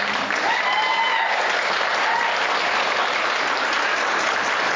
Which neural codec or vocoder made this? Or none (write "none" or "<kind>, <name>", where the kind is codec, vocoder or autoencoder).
none